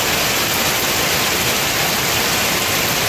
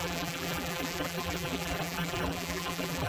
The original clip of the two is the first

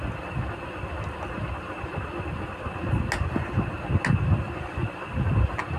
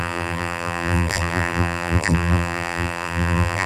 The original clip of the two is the first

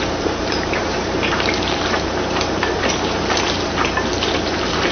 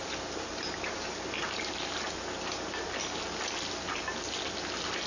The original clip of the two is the second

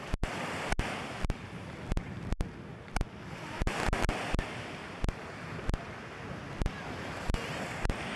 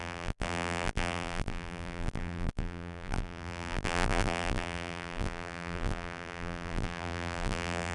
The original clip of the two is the first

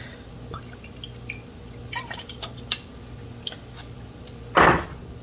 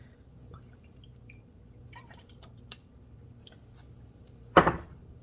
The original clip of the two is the first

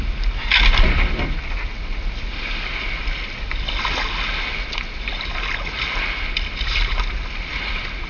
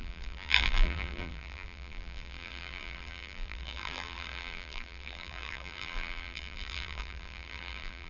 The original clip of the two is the first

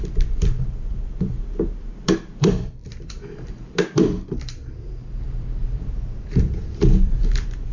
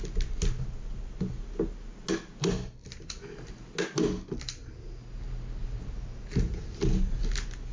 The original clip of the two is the second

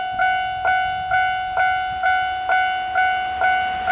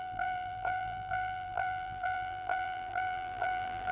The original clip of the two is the first